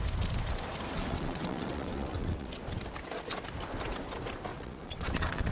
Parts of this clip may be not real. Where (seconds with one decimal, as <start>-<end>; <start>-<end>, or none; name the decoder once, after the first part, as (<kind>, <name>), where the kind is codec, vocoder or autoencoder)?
1.0-2.6 (vocoder, WaveNeXt); 4.5-5.5